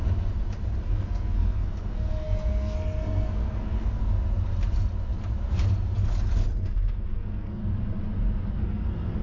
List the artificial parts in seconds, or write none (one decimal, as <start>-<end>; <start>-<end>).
0.8-4.0; 6.7-7.6; 8.5-9.2